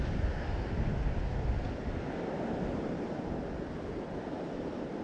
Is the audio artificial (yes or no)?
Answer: yes